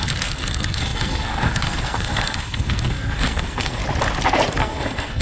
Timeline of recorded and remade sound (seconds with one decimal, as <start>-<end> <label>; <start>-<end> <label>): 0.0-3.8 remade; 3.8-4.6 recorded; 4.6-5.2 remade